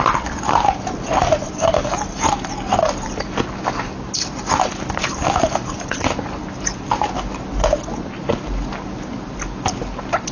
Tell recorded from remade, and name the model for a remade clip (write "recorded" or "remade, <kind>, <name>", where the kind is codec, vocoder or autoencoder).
recorded